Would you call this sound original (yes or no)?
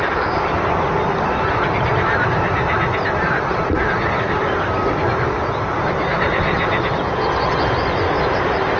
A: yes